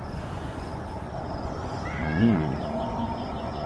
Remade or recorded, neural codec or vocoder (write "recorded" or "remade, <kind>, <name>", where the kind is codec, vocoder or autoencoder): remade, vocoder, Vocos